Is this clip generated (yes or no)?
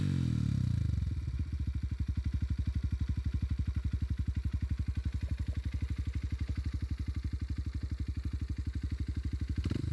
no